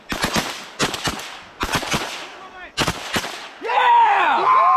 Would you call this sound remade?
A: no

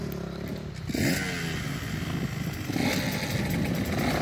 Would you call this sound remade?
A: no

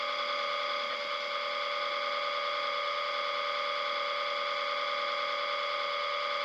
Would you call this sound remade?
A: no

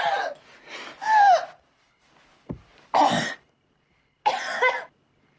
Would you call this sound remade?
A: no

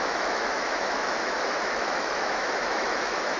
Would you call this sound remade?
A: yes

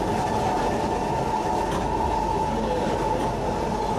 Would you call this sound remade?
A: no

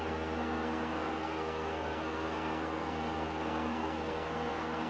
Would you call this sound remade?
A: yes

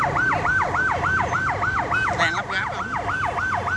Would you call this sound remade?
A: no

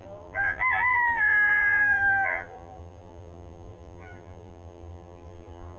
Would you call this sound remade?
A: yes